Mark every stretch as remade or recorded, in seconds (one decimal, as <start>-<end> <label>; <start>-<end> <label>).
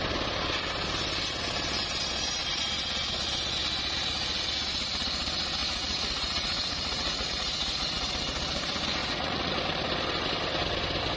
0.0-5.6 recorded; 5.6-8.1 remade; 8.1-9.0 recorded; 9.0-9.5 remade; 9.5-11.2 recorded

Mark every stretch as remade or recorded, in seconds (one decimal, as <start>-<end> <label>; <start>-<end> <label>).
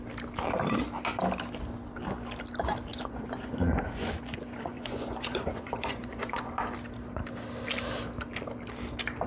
0.0-2.9 recorded; 2.9-6.5 remade; 6.5-9.3 recorded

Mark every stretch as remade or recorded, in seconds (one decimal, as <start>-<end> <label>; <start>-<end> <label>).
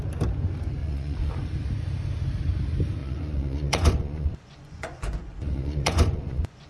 0.0-0.8 recorded; 0.8-1.3 remade; 1.3-3.0 recorded; 3.0-6.7 remade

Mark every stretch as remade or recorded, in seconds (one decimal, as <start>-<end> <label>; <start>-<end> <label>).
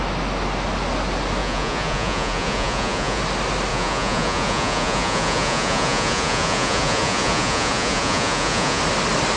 0.0-1.4 recorded; 1.4-3.2 remade; 3.2-3.7 recorded; 3.7-8.8 remade; 8.8-9.4 recorded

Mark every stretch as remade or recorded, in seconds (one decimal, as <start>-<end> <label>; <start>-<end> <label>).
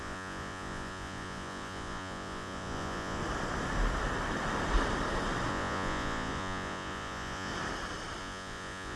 0.0-3.2 remade; 3.2-5.5 recorded; 5.5-7.5 remade; 7.5-8.2 recorded; 8.2-9.0 remade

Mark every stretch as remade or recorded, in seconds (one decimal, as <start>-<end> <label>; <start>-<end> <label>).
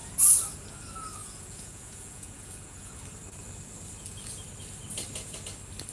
0.0-1.2 recorded; 1.2-3.0 remade; 3.0-5.9 recorded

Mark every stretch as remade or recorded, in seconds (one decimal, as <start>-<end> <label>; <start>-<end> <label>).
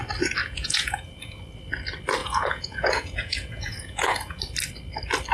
0.0-0.4 recorded; 0.4-1.4 remade; 1.4-2.2 recorded; 2.2-4.4 remade; 4.4-5.3 recorded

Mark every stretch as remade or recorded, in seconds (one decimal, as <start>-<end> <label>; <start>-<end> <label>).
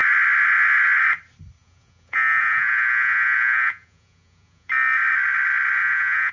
0.0-1.6 recorded; 1.6-4.7 remade; 4.7-5.8 recorded; 5.8-6.3 remade